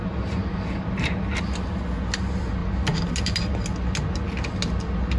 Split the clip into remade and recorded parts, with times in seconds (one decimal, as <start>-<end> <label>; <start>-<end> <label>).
0.0-5.2 recorded